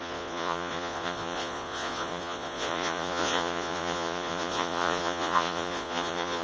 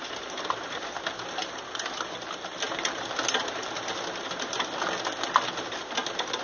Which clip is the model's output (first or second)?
first